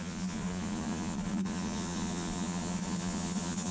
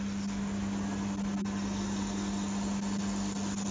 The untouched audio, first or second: second